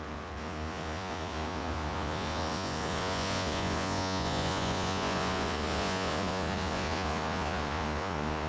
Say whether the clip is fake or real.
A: fake